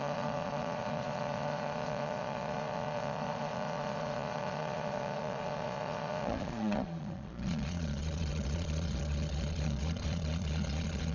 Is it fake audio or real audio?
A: fake